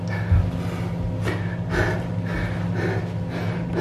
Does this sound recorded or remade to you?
recorded